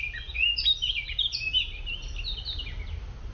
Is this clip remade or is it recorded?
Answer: recorded